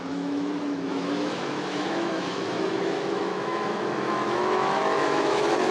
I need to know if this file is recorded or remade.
remade